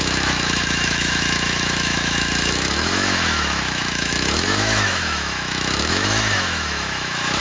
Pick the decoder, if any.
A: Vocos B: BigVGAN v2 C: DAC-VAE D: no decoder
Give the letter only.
C